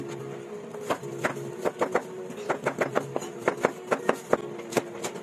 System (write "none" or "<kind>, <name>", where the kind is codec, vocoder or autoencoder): none